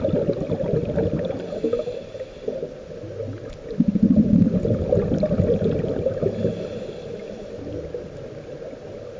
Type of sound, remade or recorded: recorded